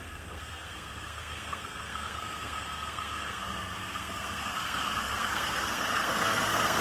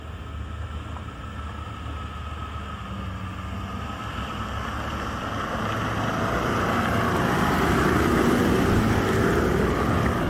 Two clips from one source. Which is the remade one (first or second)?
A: first